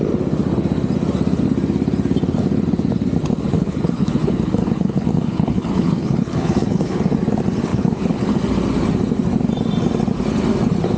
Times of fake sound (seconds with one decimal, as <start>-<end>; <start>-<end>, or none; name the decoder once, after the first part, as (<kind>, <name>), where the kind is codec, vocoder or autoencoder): 3.5-7.0 (codec, HILCodec); 7.7-8.4